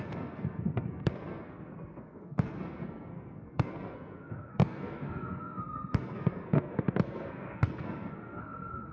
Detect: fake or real fake